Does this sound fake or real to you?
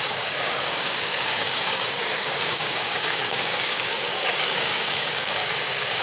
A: fake